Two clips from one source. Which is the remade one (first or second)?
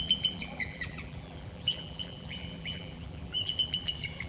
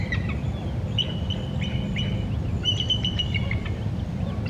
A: first